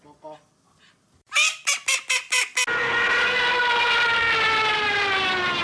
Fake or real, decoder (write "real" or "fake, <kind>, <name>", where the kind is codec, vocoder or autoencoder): real